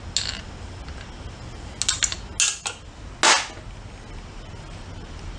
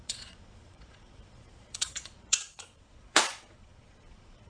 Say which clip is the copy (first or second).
second